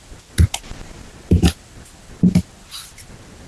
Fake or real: real